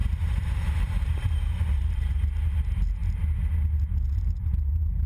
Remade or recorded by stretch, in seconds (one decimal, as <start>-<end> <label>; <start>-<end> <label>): 0.0-2.2 remade; 2.2-5.1 recorded